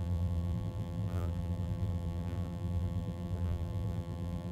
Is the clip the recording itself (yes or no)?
no